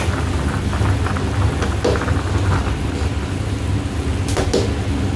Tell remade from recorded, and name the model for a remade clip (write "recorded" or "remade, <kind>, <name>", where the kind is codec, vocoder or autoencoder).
recorded